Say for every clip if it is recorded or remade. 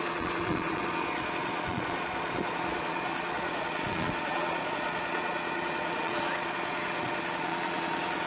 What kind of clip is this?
remade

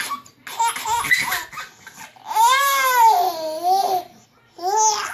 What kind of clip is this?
recorded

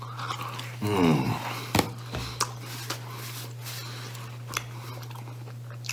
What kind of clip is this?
recorded